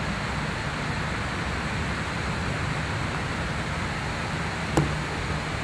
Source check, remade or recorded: recorded